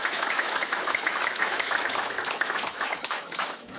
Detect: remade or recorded remade